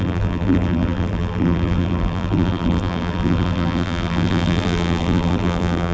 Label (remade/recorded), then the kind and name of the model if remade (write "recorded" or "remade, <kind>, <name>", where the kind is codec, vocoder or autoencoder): remade, vocoder, BigVGAN v2